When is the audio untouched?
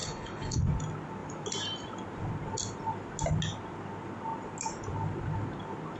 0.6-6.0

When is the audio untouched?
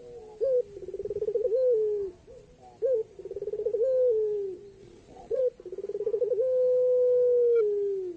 0.0-4.8; 5.4-8.2